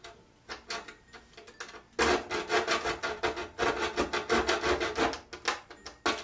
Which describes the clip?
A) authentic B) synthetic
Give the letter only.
A